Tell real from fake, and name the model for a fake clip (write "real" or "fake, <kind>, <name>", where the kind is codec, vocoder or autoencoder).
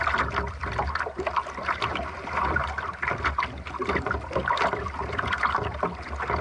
real